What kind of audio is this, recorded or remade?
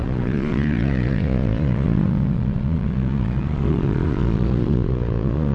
remade